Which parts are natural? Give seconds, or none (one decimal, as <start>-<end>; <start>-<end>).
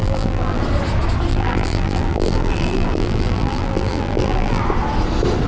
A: 0.6-1.3; 4.6-5.5